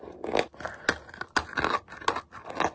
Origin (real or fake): real